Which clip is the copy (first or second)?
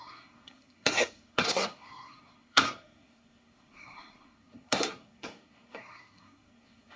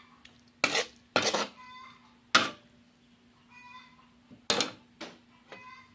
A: first